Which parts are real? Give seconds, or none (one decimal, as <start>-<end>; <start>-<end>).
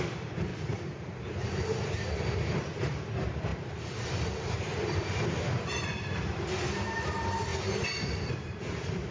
7.5-8.3